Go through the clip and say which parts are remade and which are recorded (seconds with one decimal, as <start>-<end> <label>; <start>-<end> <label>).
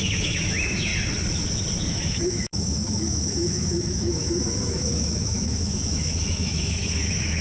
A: 0.0-0.9 remade; 0.9-1.9 recorded; 1.9-7.4 remade